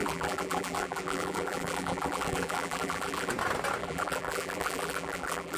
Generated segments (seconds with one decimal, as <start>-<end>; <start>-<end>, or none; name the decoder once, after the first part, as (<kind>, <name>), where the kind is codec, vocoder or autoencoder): 0.0-3.3 (vocoder, BigVGAN v2); 3.8-5.6